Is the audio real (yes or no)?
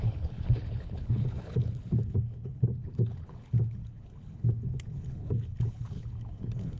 no